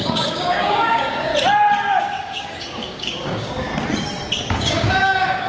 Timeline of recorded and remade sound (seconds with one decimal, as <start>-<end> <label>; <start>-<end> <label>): 0.0-1.3 remade; 1.3-2.0 recorded; 2.0-3.7 remade; 3.7-4.5 recorded; 4.5-5.5 remade